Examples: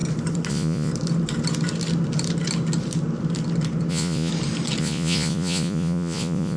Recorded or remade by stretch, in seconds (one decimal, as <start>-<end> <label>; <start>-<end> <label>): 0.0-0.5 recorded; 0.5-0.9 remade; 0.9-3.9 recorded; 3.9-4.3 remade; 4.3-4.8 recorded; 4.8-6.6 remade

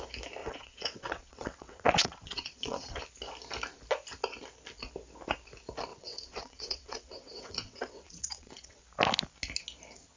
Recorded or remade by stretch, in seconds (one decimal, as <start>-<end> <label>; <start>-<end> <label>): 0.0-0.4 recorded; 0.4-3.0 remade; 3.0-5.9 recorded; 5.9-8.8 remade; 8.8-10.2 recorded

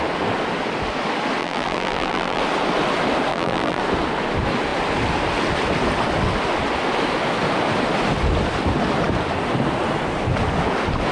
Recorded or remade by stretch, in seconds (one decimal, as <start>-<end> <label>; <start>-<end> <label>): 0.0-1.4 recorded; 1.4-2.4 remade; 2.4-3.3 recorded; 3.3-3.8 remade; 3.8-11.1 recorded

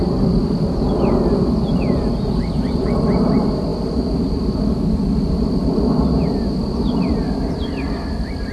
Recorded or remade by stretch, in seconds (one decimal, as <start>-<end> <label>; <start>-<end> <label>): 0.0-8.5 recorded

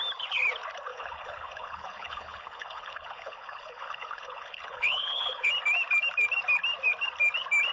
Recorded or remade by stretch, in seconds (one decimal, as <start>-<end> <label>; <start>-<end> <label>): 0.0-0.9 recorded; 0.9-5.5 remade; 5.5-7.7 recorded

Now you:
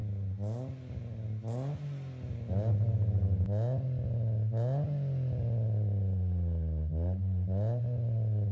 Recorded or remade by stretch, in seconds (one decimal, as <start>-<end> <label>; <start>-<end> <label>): 0.0-8.5 recorded